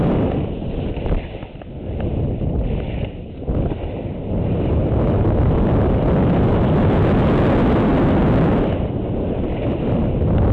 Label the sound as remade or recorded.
recorded